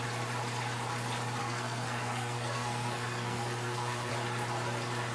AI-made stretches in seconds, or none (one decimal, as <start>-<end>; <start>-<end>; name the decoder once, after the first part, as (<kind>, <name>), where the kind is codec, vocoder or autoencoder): 1.4-4.1 (codec, SNAC)